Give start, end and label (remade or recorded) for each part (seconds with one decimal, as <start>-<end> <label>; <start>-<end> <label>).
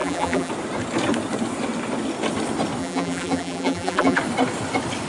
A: 0.0-0.5 remade; 0.5-2.8 recorded; 2.8-4.2 remade; 4.2-5.1 recorded